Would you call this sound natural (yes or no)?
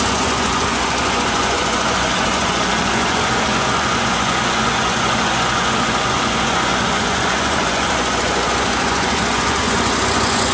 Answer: no